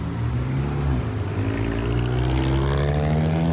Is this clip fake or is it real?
real